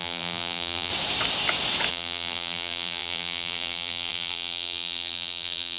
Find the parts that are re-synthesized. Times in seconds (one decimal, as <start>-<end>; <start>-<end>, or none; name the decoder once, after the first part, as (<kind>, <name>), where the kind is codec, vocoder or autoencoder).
0.0-0.9 (vocoder, BigVGAN v2); 1.9-5.8